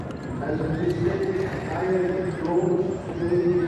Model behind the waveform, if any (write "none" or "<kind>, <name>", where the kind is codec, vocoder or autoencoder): vocoder, BigVGAN v2